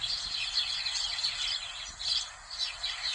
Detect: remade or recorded recorded